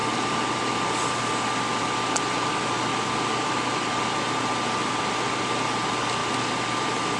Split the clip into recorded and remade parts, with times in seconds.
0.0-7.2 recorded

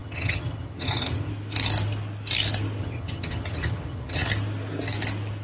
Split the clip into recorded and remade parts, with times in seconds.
0.0-1.3 remade; 1.3-2.8 recorded; 2.8-4.3 remade; 4.3-5.4 recorded

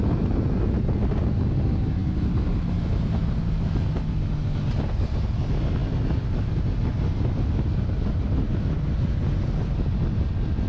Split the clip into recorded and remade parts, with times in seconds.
0.0-10.7 recorded

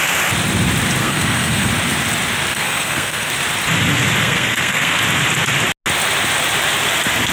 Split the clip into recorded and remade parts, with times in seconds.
0.0-1.0 recorded; 1.0-1.7 remade; 1.7-2.5 recorded; 2.5-3.3 remade; 3.3-4.2 recorded; 4.2-5.0 remade; 5.0-7.3 recorded